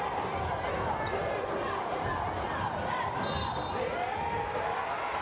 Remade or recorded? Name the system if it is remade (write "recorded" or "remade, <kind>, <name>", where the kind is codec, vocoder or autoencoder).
recorded